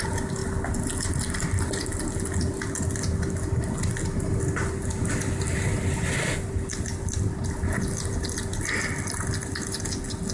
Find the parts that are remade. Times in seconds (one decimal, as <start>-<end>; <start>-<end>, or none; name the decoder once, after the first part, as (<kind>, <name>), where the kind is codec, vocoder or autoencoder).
none